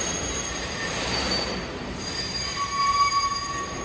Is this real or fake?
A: fake